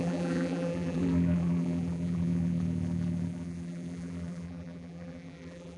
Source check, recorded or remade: remade